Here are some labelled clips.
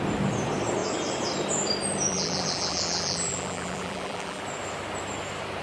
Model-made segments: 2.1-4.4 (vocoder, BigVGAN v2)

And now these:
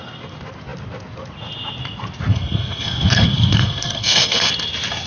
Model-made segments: 2.3-4.5 (codec, SNAC)

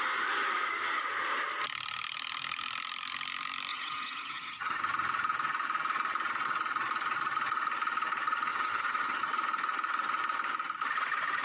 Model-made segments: 3.7-4.8 (vocoder, HiFi-GAN); 8.5-9.2

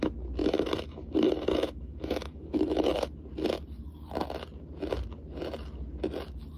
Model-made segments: 0.4-3.1 (autoencoder, DAC-VAE)

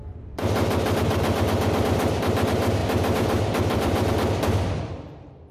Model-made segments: 2.8-4.1 (vocoder, BigVGAN v2)